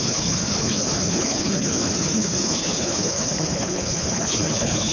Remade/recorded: remade